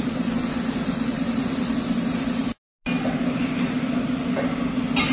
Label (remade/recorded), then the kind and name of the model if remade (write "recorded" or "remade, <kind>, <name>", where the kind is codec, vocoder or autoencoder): recorded